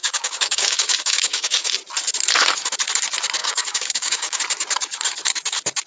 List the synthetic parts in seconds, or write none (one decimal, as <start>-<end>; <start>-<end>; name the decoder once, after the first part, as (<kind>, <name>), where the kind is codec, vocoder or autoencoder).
0.0-1.7 (codec, DAC); 3.4-4.4